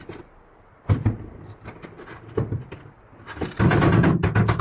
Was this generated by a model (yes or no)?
no